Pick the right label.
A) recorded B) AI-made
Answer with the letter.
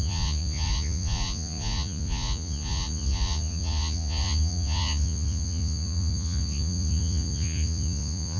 B